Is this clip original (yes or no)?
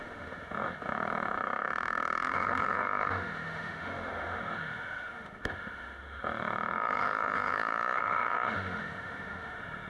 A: no